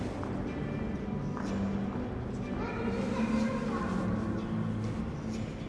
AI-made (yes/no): no